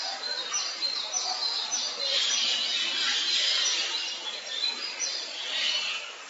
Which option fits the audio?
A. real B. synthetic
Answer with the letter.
A